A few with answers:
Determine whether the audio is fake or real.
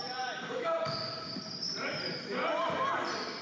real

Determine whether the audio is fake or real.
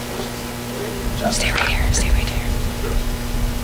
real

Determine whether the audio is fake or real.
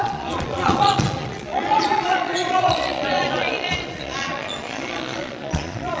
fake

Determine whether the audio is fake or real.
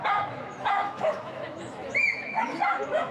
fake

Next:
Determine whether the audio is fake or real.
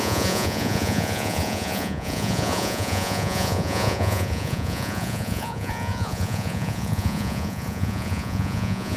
fake